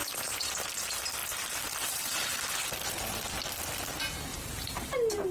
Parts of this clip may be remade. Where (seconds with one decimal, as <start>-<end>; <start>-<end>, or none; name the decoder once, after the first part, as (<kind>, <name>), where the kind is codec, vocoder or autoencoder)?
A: 0.0-0.5 (vocoder, BigVGAN v2); 4.3-5.3